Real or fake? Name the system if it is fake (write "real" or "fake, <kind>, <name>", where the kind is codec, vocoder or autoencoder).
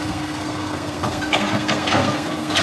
fake, codec, SNAC